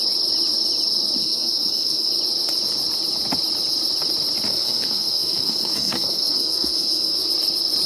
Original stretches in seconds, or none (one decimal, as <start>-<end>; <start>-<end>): 0.0-1.2; 2.1-4.5; 7.3-7.9